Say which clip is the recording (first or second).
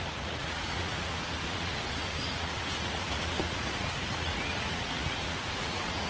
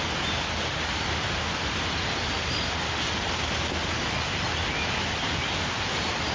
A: second